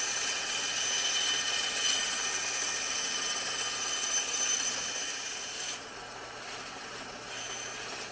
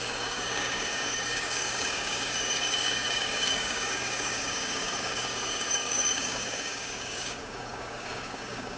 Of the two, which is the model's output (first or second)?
second